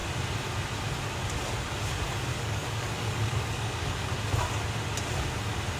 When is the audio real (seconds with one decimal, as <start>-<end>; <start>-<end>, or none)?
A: 0.0-2.3; 4.1-5.8